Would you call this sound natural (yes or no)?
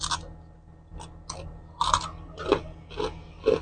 yes